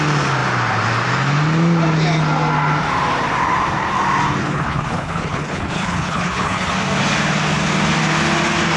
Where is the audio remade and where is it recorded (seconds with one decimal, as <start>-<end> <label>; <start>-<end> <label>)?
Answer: 0.0-4.4 recorded; 4.4-6.7 remade; 6.7-8.8 recorded